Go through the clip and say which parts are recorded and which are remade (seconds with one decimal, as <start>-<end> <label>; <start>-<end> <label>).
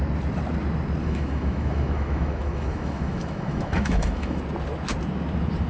0.0-1.0 recorded; 1.0-4.4 remade; 4.4-5.7 recorded